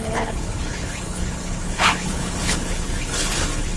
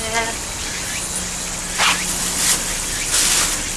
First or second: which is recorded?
second